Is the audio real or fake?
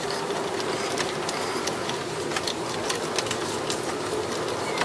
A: real